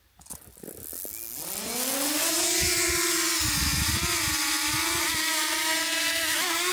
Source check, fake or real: real